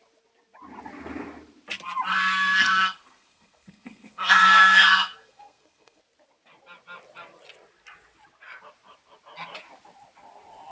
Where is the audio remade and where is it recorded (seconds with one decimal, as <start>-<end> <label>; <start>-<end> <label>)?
0.0-2.1 recorded; 2.1-6.0 remade; 6.0-10.7 recorded